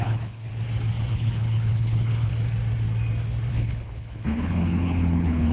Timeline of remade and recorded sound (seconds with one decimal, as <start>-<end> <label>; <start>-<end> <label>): 0.0-0.5 remade; 0.5-1.1 recorded; 1.1-2.3 remade; 2.3-3.5 recorded; 3.5-5.5 remade